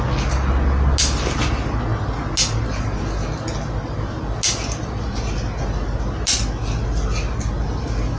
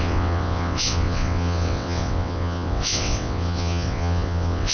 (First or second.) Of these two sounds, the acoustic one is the first